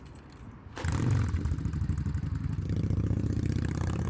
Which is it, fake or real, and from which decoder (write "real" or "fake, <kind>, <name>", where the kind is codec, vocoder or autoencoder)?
real